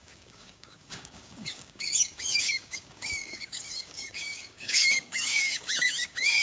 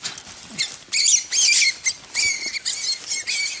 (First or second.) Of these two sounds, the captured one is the second